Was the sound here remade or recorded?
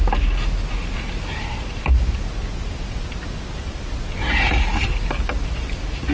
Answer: recorded